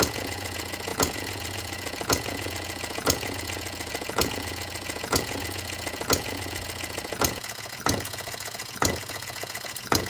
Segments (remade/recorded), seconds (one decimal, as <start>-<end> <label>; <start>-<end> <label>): 0.0-10.1 remade